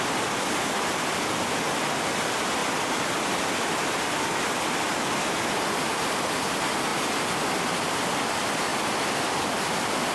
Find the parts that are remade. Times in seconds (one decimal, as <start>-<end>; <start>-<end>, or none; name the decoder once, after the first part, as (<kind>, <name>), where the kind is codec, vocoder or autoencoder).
none